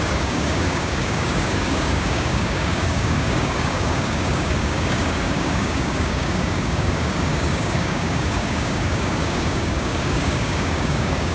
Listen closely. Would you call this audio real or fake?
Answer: fake